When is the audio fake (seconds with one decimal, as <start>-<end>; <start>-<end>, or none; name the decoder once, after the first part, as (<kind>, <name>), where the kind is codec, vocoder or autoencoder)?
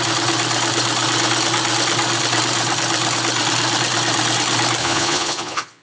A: 4.8-5.8 (vocoder, Vocos)